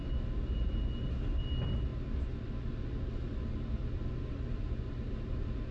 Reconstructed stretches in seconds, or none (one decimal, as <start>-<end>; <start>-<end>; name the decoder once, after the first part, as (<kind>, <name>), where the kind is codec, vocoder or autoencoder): none